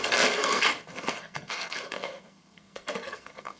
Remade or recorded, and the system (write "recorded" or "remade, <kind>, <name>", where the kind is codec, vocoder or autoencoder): remade, codec, SNAC